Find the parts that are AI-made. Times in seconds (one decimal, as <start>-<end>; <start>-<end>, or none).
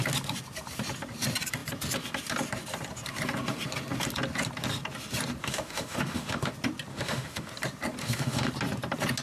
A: 5.4-6.5; 6.9-7.5; 8.0-8.5